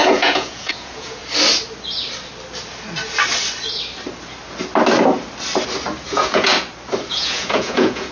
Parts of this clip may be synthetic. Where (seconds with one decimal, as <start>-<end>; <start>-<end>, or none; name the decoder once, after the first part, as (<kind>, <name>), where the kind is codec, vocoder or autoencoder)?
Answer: 0.0-1.2 (vocoder, Vocos); 6.1-6.5; 7.1-8.1